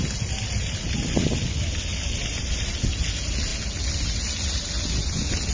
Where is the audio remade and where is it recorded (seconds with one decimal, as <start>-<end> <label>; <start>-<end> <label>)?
0.0-5.5 recorded